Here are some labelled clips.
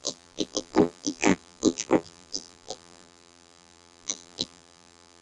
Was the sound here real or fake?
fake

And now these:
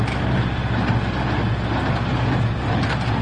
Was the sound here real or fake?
real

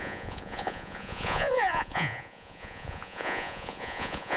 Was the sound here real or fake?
fake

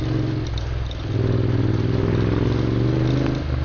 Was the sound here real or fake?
real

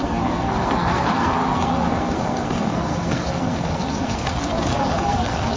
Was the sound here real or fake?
fake